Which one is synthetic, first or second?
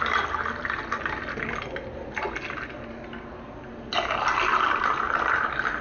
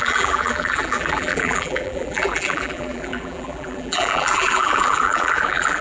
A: second